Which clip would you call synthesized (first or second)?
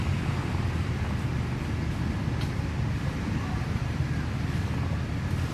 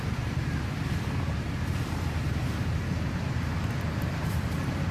second